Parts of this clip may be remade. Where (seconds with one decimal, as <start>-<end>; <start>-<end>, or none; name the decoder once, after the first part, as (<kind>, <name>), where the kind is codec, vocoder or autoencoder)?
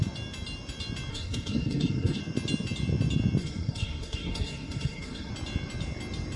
1.1-2.2 (codec, SNAC); 3.4-5.3